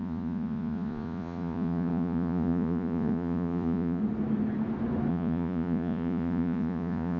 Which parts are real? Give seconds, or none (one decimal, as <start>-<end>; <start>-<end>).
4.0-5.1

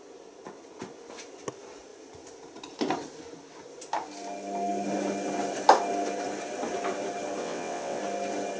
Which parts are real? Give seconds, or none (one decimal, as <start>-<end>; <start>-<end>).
0.0-7.4; 8.0-8.6

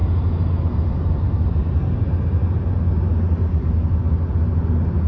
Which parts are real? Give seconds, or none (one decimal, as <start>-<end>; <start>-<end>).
0.0-5.1